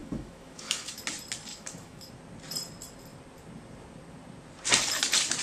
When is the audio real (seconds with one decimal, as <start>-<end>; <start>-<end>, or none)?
1.0-1.5; 2.1-5.4